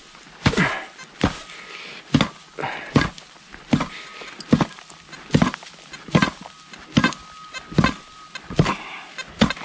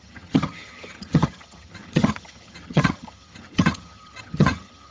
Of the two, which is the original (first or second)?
first